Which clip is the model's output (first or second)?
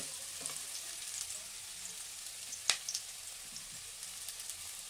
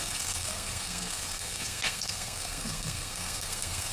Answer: second